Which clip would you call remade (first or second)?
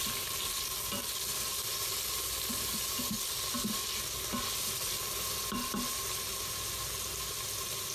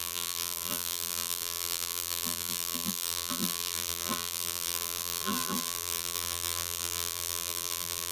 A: second